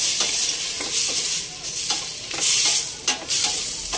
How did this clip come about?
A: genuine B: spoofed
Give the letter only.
A